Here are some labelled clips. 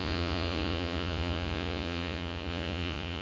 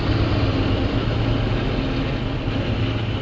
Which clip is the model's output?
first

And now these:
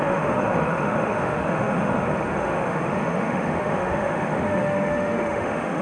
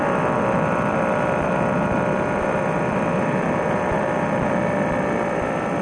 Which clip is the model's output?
first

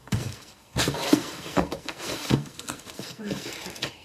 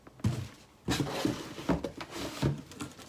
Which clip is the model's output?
first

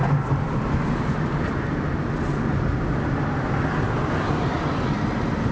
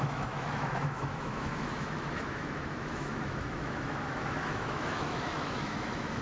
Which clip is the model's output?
second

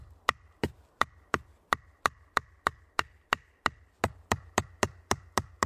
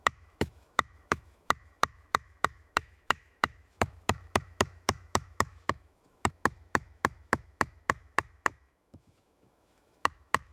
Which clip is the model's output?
second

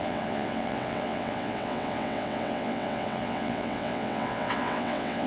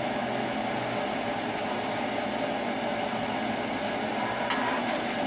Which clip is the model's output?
first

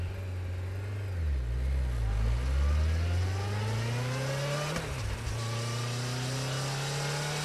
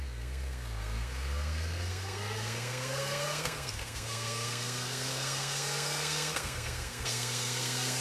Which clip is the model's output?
second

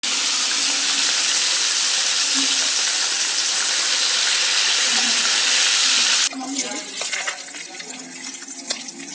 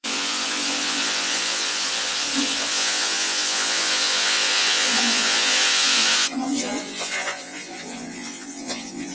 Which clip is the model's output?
second